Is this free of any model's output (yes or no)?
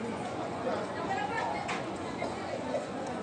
no